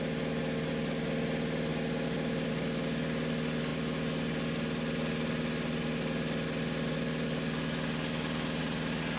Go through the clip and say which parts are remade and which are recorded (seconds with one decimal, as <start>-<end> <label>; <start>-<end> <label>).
0.0-9.2 recorded